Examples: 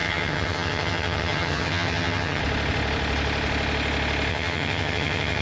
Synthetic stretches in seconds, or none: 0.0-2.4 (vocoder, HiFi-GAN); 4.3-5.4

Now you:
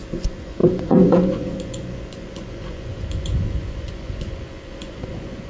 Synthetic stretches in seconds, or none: 0.0-5.5 (vocoder, Vocos)

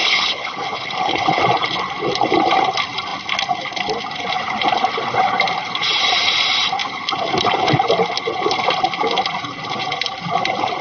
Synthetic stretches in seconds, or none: 0.0-1.4 (codec, HILCodec)